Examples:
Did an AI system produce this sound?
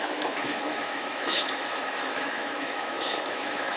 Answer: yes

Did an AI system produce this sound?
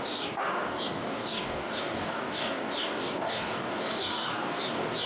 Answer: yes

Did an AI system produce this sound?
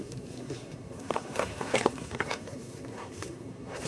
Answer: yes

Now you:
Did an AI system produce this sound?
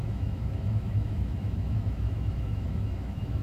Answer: yes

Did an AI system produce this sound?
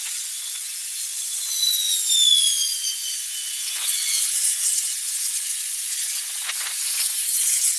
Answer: yes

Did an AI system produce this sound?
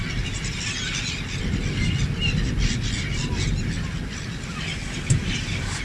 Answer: no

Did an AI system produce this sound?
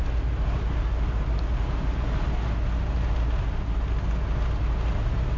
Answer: no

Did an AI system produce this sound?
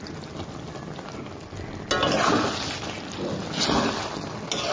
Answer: no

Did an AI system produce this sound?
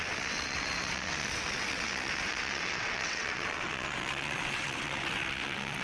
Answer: yes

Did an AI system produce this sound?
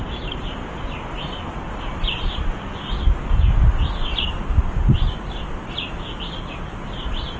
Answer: no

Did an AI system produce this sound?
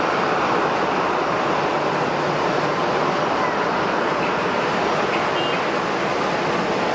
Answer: no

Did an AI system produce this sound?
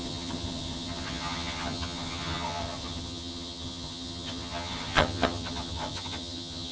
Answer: yes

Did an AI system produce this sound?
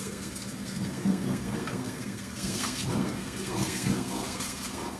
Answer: yes